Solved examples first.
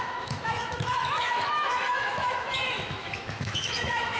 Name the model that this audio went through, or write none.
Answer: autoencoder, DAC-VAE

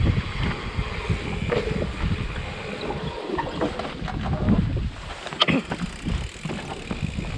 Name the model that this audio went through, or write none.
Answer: none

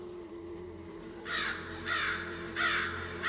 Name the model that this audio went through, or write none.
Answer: none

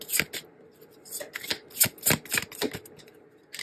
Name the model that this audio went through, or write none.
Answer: none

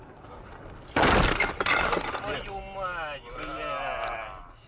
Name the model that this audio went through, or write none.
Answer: none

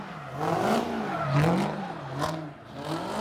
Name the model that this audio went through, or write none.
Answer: none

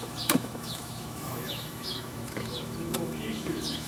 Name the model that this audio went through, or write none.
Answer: autoencoder, DAC-VAE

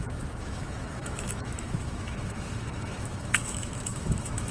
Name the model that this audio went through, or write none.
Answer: autoencoder, DAC-VAE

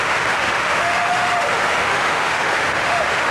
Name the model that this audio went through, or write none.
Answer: autoencoder, DAC-VAE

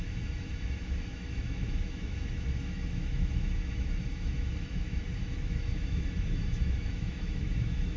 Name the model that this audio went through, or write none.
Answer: autoencoder, DAC-VAE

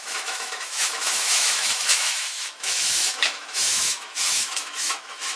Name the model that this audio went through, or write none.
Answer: autoencoder, DAC-VAE